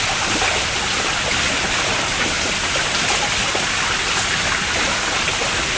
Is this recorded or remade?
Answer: recorded